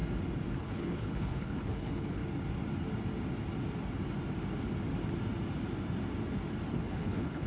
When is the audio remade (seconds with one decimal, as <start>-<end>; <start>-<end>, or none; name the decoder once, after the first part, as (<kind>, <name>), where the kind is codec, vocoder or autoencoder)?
0.6-2.2 (codec, HILCodec); 6.7-7.5